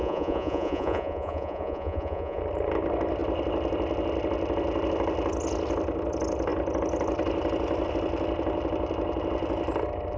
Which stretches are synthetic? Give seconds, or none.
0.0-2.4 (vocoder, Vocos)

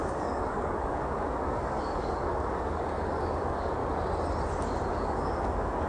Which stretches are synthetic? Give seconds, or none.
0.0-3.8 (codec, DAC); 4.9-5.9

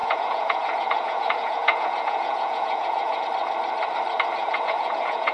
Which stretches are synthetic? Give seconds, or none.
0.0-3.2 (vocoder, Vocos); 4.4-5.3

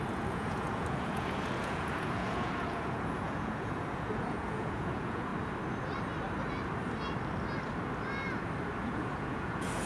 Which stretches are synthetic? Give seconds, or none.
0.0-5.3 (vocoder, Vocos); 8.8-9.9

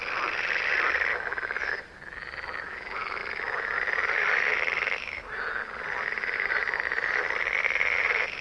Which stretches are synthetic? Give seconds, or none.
none